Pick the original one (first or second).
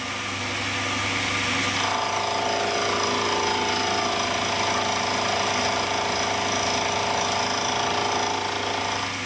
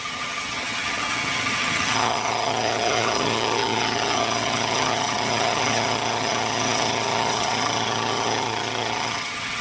first